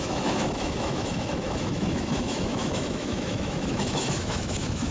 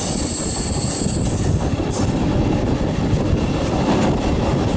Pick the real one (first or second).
second